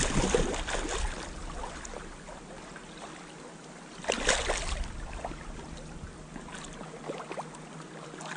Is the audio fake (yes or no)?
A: no